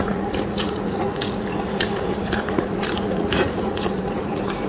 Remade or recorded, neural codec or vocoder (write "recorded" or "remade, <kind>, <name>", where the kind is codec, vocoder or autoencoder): remade, vocoder, Vocos